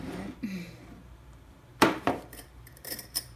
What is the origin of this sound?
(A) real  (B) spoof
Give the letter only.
B